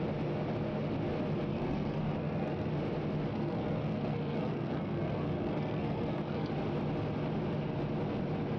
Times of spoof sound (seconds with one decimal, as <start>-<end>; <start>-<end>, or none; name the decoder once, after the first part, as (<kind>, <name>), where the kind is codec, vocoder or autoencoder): 1.5-2.7 (codec, SNAC); 3.3-6.5